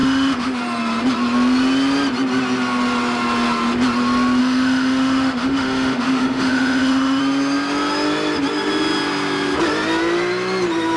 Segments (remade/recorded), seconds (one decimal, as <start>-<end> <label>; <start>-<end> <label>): 0.0-0.6 remade; 0.6-4.4 recorded; 4.4-7.2 remade; 7.2-11.0 recorded